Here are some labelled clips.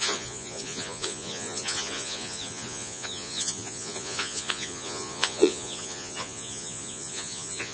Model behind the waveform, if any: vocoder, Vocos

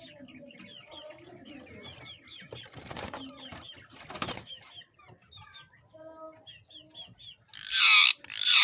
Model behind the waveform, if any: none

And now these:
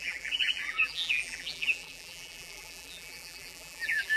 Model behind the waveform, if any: vocoder, BigVGAN v2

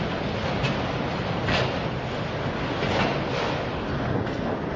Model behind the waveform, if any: none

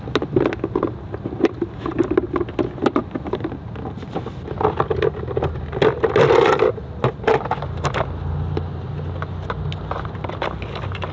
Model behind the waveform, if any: none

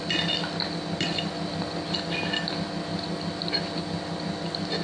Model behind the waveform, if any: none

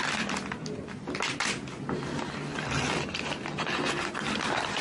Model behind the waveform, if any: none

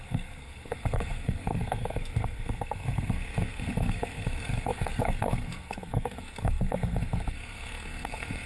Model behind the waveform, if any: codec, SNAC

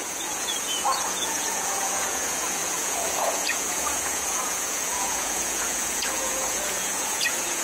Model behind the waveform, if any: vocoder, Vocos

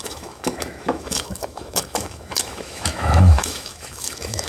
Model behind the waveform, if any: autoencoder, DAC-VAE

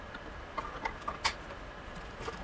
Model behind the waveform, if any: none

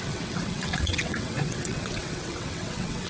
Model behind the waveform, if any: vocoder, WaveNeXt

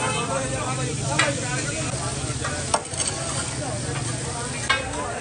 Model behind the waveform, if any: none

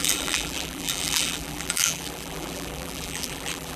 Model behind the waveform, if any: vocoder, BigVGAN v2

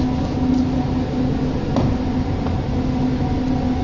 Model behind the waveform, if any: none